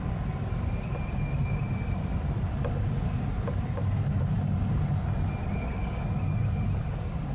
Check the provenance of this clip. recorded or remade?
recorded